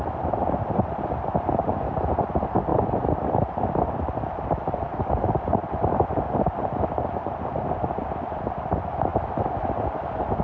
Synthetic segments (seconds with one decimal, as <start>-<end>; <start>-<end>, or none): 0.0-10.4